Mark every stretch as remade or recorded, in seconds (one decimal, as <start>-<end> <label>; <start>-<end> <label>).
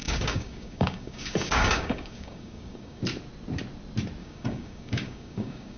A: 0.0-3.0 remade; 3.0-4.2 recorded; 4.2-5.8 remade